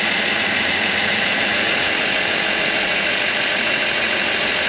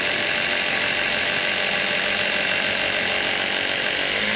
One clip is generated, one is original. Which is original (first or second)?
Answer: second